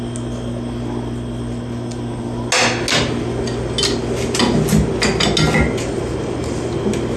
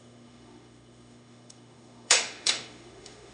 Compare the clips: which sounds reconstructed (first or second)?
second